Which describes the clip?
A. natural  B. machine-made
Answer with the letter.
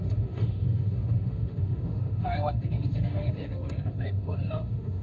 B